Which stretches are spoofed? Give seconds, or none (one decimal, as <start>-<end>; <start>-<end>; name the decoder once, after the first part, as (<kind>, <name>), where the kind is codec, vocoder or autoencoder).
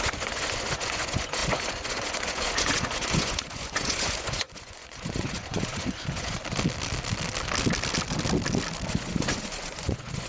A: 0.0-6.4 (vocoder, Vocos); 8.9-10.3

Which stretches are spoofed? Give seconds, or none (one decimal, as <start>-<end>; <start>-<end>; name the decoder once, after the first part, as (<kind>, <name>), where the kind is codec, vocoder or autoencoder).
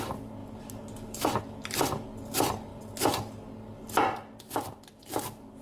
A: none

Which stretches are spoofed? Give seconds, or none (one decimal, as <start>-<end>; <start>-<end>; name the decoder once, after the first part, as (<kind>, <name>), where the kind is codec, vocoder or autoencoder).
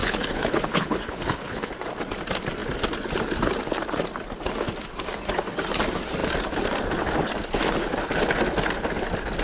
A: 0.0-1.7 (codec, HILCodec)